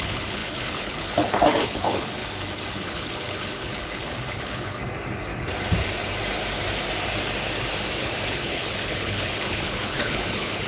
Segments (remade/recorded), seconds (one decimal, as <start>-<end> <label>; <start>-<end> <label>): 0.0-2.2 remade; 2.2-2.7 recorded; 2.7-4.8 remade; 4.8-8.3 recorded; 8.3-10.7 remade